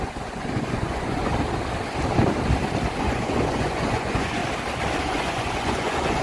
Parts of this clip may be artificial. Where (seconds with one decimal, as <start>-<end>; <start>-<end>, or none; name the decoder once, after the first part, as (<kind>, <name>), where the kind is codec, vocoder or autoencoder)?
0.0-1.3 (vocoder, Vocos); 3.0-4.4; 5.0-6.2